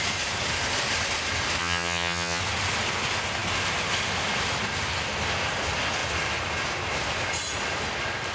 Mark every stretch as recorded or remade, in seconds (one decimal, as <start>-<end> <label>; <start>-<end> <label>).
0.0-1.6 recorded; 1.6-2.4 remade; 2.4-8.3 recorded

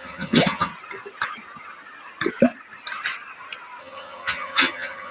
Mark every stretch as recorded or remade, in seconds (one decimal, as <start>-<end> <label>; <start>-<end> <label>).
0.0-0.7 remade; 0.7-3.8 recorded; 3.8-5.1 remade

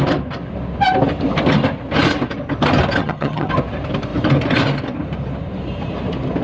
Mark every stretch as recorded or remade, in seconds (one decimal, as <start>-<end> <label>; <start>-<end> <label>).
0.0-3.0 recorded; 3.0-3.5 remade; 3.5-6.4 recorded

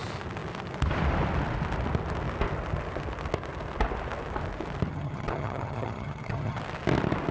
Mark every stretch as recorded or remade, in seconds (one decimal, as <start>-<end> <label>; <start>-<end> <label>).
0.0-4.9 recorded; 4.9-6.6 remade; 6.6-7.3 recorded

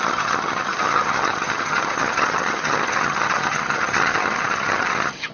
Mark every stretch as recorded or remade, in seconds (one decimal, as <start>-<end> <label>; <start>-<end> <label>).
0.0-5.3 remade